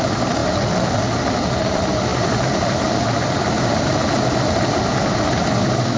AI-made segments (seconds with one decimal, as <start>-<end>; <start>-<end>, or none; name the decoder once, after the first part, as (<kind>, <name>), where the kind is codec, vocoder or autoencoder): none